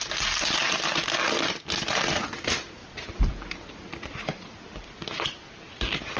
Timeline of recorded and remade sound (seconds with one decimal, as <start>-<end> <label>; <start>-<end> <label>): 0.0-6.2 recorded